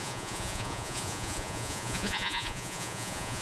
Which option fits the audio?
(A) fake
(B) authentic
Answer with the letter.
A